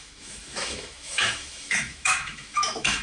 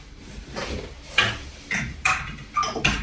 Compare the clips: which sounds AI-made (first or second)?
first